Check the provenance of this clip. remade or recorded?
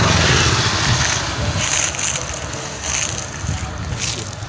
recorded